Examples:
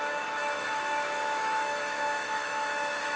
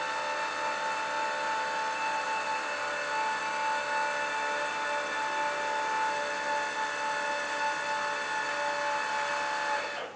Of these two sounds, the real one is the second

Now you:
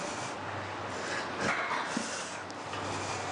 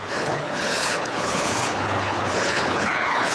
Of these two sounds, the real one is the first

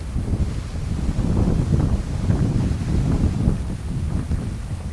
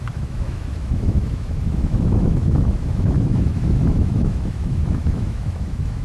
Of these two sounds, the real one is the first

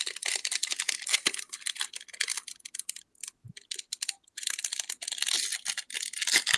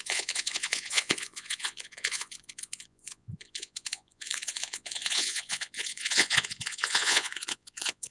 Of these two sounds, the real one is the first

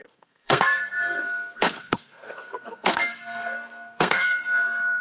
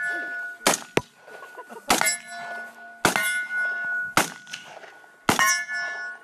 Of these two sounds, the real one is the second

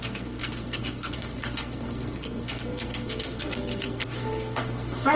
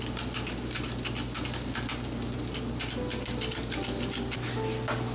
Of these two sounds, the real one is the second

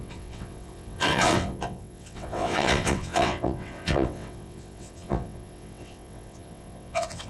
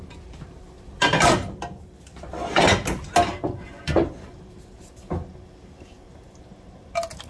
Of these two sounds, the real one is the second